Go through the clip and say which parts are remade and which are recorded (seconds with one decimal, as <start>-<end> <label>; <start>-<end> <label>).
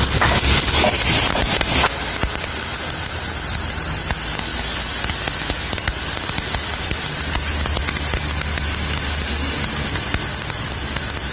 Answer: 0.0-4.5 recorded; 4.5-7.8 remade; 7.8-11.3 recorded